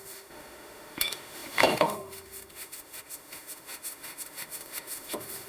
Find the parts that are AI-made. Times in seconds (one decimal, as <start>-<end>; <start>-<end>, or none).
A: 0.0-5.5